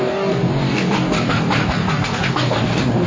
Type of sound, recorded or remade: remade